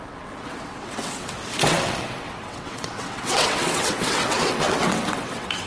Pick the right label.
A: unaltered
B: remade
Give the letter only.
B